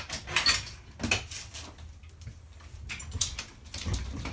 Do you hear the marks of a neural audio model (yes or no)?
no